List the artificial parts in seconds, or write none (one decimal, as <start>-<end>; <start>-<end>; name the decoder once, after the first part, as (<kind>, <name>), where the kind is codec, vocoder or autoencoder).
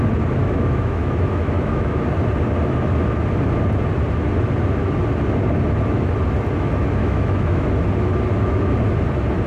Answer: 0.4-2.1 (autoencoder, DAC-VAE); 7.0-7.7